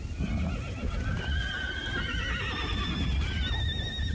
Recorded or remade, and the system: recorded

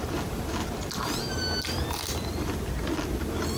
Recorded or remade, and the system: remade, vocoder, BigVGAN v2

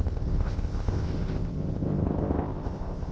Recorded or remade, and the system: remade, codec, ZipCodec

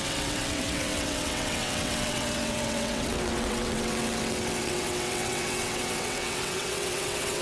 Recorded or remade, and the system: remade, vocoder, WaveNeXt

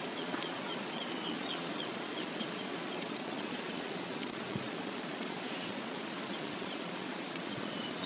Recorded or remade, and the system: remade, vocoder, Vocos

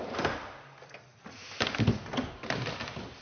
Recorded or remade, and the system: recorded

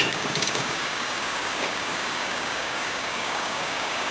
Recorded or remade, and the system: remade, codec, DAC